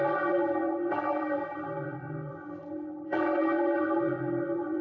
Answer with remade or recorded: remade